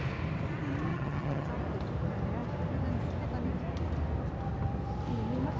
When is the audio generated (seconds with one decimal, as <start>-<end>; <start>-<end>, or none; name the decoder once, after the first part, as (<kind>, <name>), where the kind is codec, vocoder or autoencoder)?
0.9-1.5 (vocoder, HiFi-GAN)